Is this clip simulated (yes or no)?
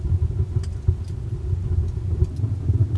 no